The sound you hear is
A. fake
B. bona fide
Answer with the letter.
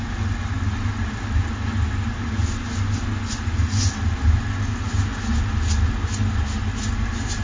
B